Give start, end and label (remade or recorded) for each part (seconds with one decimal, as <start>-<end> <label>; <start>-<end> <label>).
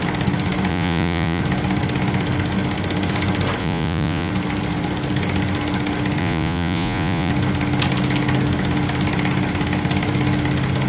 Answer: 0.0-0.7 recorded; 0.7-1.4 remade; 1.4-3.6 recorded; 3.6-4.3 remade; 4.3-6.2 recorded; 6.2-7.3 remade; 7.3-10.9 recorded